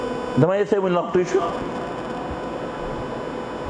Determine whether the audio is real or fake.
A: real